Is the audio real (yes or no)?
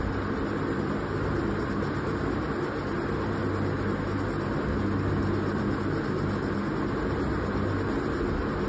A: yes